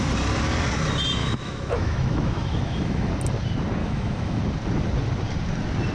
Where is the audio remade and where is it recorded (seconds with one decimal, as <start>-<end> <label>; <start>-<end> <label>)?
0.0-1.2 recorded; 1.2-3.1 remade; 3.1-3.8 recorded; 3.8-4.4 remade; 4.4-5.9 recorded